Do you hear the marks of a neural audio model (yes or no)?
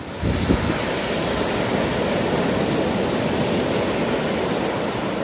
no